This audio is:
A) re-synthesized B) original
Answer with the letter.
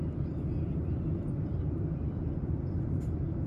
B